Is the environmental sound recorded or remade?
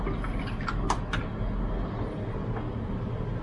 recorded